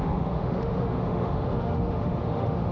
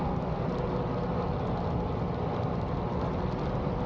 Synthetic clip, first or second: first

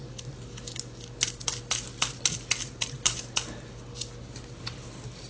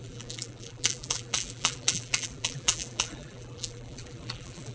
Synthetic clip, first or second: second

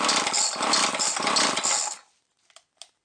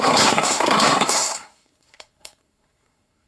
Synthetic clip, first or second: second